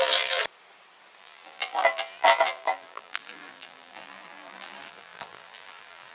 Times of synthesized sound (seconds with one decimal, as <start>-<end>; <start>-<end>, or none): 0.0-0.4; 1.2-6.1